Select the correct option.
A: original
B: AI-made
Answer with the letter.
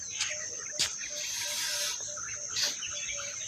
A